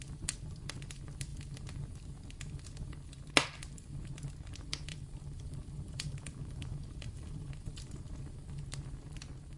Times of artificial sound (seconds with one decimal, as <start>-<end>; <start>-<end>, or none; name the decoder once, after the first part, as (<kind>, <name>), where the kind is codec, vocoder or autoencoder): 4.9-7.5 (vocoder, BigVGAN v2)